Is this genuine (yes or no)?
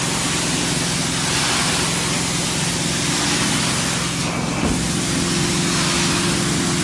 yes